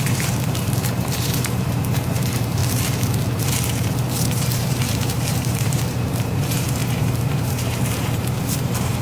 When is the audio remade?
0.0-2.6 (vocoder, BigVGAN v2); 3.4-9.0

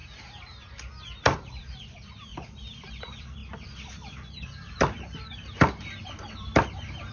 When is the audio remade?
1.0-7.1 (vocoder, BigVGAN v2)

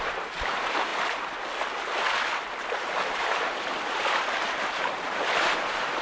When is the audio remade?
0.0-0.9 (vocoder, BigVGAN v2); 4.5-6.0

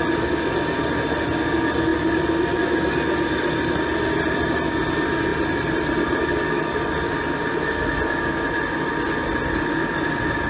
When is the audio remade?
5.3-6.2 (vocoder, BigVGAN v2)

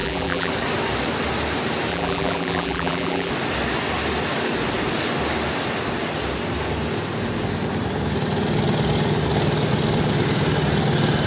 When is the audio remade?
0.0-0.5 (vocoder, BigVGAN v2); 1.9-3.3

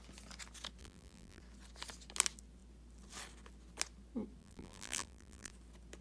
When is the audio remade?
0.8-1.4 (vocoder, BigVGAN v2); 4.4-5.5